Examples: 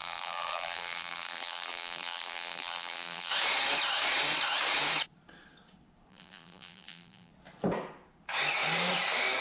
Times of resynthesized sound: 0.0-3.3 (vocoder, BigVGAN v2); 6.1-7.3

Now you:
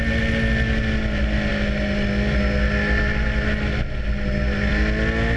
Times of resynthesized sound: none

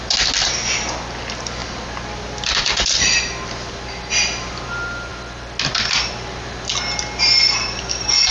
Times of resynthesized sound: 1.6-3.2 (vocoder, BigVGAN v2)